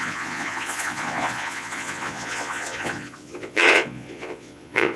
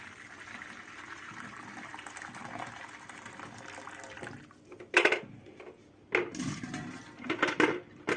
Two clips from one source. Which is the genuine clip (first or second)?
second